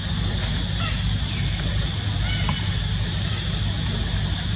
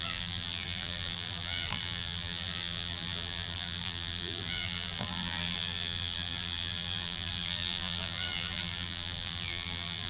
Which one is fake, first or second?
second